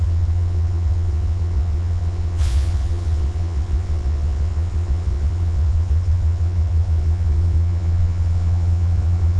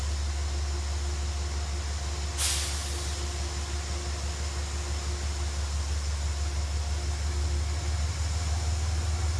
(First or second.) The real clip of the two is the second